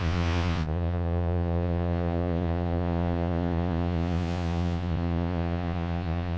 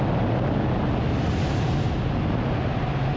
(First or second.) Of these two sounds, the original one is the second